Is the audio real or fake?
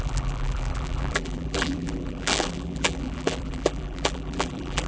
fake